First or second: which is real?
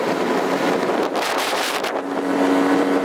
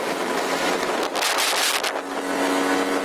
second